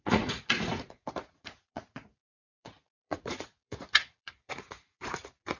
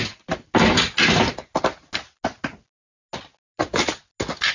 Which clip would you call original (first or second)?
second